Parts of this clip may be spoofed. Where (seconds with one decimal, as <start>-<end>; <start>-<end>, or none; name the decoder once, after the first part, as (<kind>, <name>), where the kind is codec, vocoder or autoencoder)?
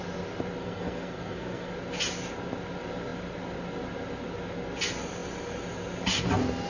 0.6-1.7 (codec, SNAC)